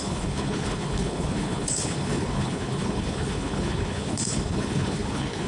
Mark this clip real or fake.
fake